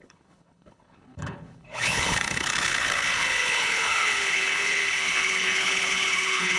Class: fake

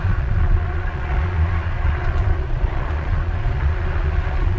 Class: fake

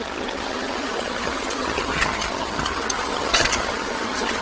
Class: fake